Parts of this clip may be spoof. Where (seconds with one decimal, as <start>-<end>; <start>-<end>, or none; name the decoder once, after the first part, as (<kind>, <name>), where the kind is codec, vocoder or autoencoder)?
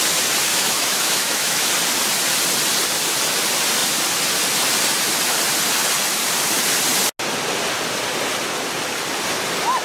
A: 0.5-1.7 (autoencoder, DAC-VAE)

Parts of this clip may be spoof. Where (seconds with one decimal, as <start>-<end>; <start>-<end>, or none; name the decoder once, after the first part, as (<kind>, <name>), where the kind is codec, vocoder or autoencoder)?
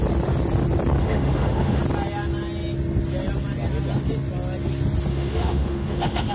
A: 1.0-1.8 (autoencoder, DAC-VAE); 5.1-6.3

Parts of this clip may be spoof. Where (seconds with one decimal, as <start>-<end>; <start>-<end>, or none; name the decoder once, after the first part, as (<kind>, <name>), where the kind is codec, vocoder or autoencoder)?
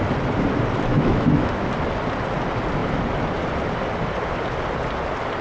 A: 0.9-1.7 (autoencoder, DAC-VAE)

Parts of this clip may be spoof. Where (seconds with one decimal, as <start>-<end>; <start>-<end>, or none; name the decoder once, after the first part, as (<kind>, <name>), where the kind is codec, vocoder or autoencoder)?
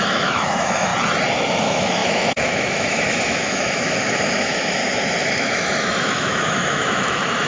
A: 0.0-0.9 (autoencoder, DAC-VAE); 1.6-4.8; 5.3-7.5